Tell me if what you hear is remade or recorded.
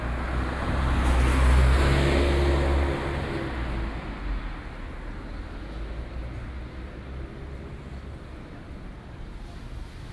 recorded